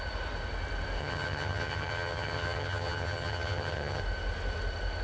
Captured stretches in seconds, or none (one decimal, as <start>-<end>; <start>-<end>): 0.0-1.0; 4.0-5.0